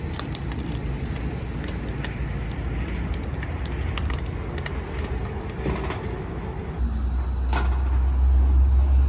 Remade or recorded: recorded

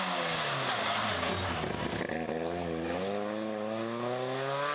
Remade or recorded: recorded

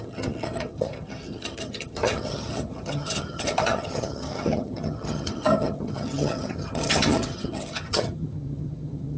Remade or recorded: remade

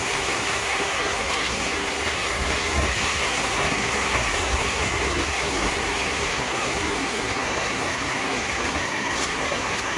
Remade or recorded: remade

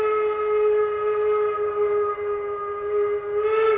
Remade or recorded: recorded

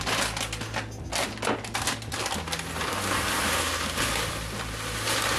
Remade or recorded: recorded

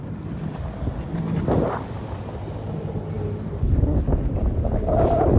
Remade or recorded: recorded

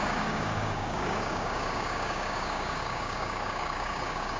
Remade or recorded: remade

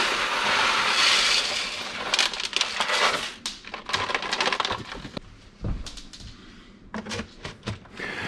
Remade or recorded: recorded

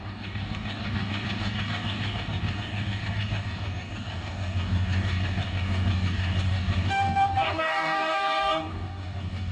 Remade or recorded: remade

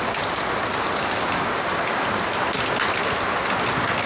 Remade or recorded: recorded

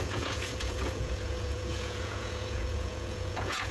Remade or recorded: remade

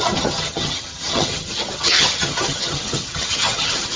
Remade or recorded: remade